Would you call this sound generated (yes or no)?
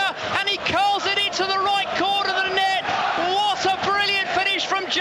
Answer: no